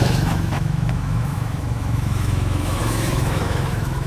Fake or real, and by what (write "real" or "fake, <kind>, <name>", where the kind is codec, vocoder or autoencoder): fake, autoencoder, DAC-VAE